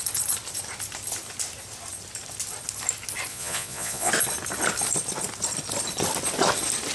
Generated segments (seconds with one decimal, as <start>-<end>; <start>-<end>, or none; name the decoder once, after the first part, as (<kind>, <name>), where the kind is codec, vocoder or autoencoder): 3.3-4.1 (vocoder, Vocos)